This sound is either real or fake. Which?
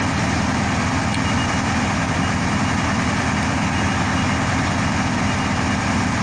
real